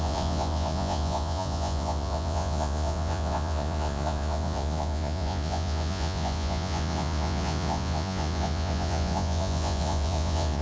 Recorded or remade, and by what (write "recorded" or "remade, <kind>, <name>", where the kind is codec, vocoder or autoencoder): remade, vocoder, Vocos